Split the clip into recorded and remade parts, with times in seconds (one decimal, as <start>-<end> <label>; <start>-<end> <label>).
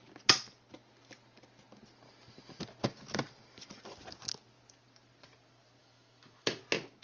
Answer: 0.0-5.8 recorded; 5.8-6.6 remade; 6.6-7.0 recorded